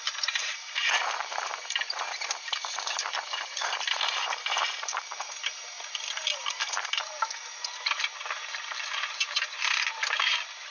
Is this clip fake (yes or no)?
yes